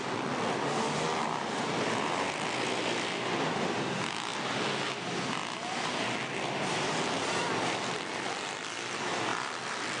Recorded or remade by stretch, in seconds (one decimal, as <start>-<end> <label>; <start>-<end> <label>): 0.0-10.0 recorded